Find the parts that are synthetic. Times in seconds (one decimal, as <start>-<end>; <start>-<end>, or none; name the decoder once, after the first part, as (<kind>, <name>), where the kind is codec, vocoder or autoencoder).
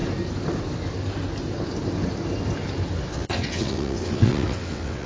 3.1-5.1 (vocoder, WaveNeXt)